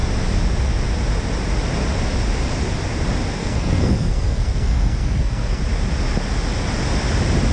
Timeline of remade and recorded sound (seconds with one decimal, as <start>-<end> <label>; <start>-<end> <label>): 0.0-3.4 recorded; 3.4-5.6 remade; 5.6-7.5 recorded